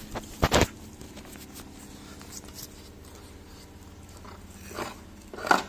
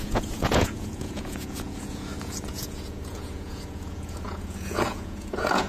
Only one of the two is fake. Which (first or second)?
second